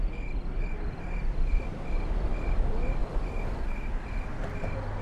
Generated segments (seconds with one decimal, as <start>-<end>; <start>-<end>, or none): none